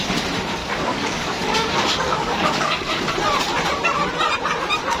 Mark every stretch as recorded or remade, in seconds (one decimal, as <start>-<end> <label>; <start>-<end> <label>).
0.0-0.6 recorded; 0.6-3.1 remade; 3.1-5.0 recorded